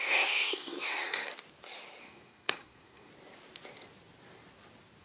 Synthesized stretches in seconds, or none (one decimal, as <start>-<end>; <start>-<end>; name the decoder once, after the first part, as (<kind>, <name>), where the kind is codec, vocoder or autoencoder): 0.0-1.3 (codec, SNAC); 2.0-3.1